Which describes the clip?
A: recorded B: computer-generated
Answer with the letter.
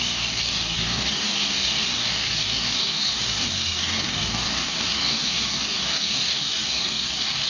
B